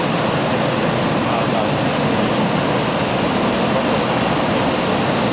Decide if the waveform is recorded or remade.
recorded